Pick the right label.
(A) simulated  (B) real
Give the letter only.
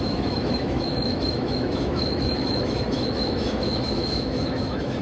A